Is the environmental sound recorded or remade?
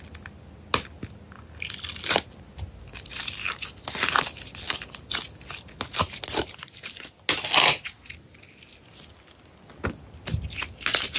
recorded